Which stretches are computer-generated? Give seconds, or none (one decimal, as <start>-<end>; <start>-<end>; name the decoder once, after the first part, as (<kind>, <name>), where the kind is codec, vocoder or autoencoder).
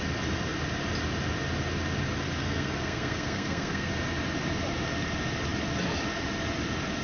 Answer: 2.4-3.9 (codec, SNAC)